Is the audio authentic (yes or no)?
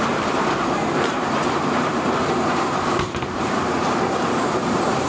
no